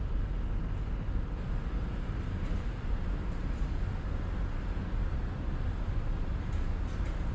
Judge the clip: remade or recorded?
recorded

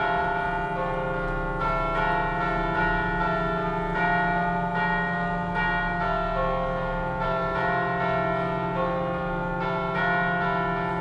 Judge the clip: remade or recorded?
recorded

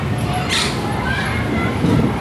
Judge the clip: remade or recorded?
recorded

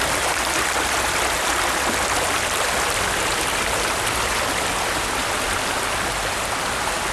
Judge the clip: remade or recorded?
remade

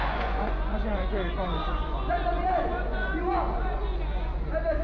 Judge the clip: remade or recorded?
remade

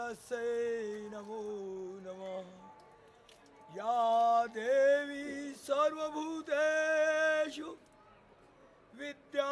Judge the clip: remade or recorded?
recorded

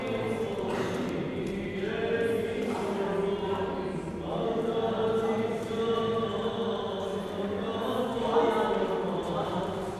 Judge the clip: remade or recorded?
recorded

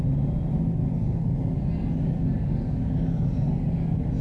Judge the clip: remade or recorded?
recorded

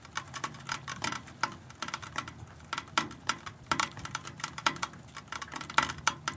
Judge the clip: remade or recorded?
recorded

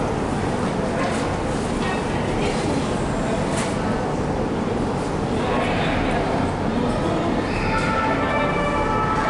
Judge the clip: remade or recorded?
recorded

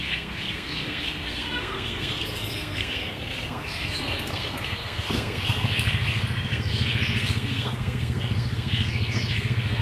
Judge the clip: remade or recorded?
remade